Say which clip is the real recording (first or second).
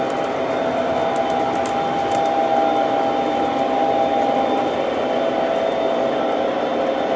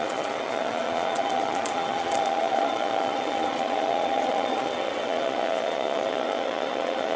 first